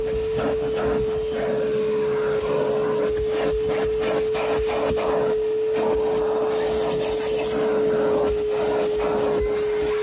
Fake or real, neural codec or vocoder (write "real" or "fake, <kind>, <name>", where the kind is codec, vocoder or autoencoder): real